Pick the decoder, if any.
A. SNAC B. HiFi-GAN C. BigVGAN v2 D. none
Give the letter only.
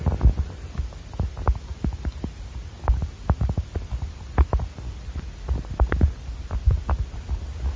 D